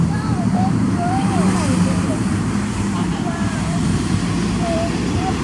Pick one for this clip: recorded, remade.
remade